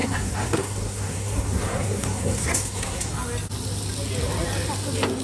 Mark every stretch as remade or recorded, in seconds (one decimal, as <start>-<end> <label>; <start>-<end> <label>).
0.0-3.1 remade; 3.1-5.2 recorded